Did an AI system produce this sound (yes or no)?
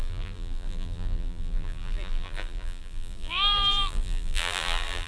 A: yes